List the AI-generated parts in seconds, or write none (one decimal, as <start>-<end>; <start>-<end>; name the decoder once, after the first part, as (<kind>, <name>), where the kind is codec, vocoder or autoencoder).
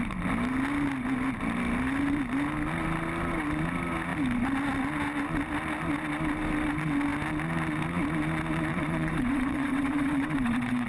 8.7-10.9 (vocoder, WaveNeXt)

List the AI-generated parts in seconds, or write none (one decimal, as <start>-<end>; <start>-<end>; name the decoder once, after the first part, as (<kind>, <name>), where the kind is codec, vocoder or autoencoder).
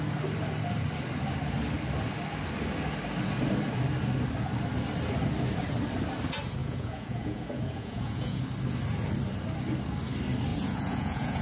6.6-8.4 (vocoder, Vocos); 10.5-11.4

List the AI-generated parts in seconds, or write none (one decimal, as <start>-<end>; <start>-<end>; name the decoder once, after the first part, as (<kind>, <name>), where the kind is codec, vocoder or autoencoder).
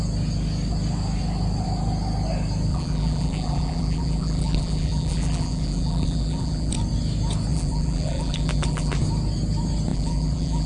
2.7-6.7 (vocoder, BigVGAN v2); 7.5-9.0; 9.9-10.7